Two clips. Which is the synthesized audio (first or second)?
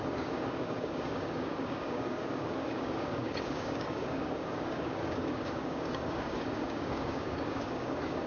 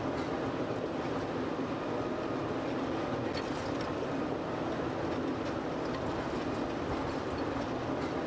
first